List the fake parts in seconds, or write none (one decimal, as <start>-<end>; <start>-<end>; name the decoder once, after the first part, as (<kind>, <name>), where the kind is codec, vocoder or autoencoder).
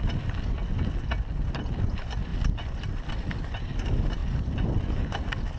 none